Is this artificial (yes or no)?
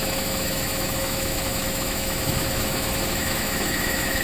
yes